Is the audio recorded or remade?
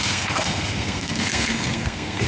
remade